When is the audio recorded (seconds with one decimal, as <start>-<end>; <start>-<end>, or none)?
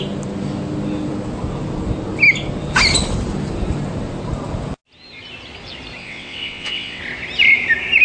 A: 0.0-6.0; 7.0-8.0